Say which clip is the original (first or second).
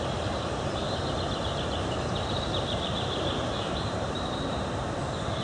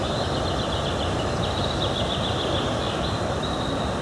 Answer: second